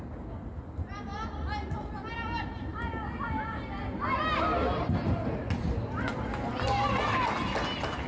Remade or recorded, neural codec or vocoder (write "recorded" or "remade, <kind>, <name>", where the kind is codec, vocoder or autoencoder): recorded